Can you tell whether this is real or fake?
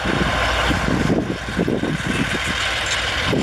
real